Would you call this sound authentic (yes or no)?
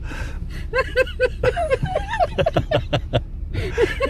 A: no